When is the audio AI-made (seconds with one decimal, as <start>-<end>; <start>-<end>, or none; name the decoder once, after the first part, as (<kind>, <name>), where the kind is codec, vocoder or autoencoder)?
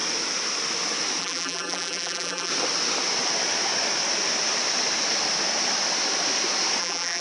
1.2-2.5 (vocoder, BigVGAN v2); 6.8-7.2